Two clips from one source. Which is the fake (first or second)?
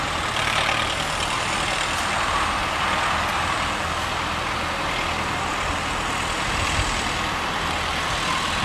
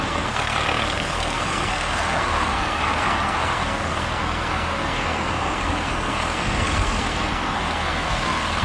second